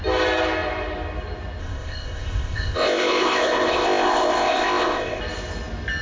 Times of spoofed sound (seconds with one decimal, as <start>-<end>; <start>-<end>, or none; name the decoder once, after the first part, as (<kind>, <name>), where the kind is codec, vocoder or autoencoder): 1.6-5.2 (codec, ZipCodec)